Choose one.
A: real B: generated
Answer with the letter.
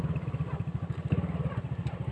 A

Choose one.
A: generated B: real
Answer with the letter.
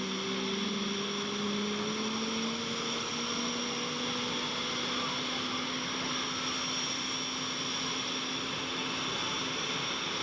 B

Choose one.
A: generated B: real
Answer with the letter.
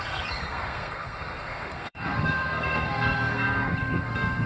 A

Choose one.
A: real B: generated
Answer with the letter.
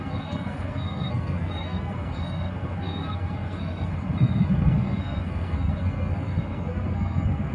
B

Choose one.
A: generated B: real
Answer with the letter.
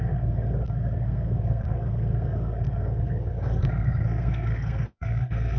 A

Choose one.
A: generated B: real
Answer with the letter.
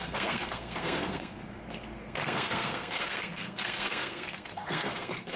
A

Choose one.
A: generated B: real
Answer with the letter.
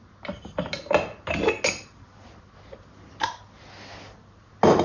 B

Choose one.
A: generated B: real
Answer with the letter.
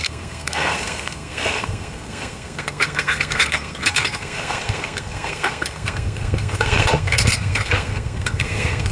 A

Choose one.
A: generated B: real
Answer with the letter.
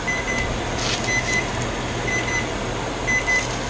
B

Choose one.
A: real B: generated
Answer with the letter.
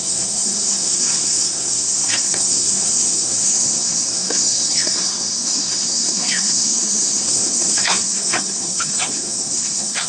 B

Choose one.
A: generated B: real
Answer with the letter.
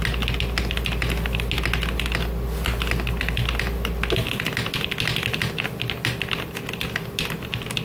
B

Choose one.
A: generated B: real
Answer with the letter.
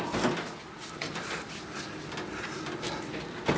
B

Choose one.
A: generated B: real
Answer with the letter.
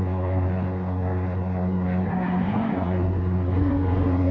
A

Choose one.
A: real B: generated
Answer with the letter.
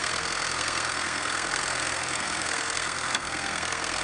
B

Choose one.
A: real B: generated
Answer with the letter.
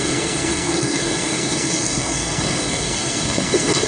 B